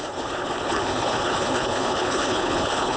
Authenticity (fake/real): fake